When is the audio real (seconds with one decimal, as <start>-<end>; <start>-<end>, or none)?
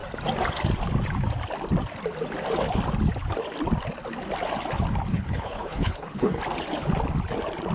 0.0-5.1; 6.4-7.7